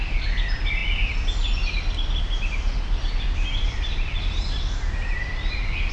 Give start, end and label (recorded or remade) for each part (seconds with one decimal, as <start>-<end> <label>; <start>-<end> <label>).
0.0-0.8 remade; 0.8-2.2 recorded; 2.2-5.9 remade